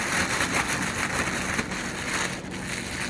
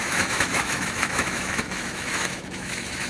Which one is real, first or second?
first